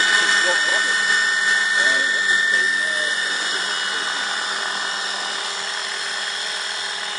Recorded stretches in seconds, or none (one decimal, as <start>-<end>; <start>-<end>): 0.0-3.1; 3.7-7.2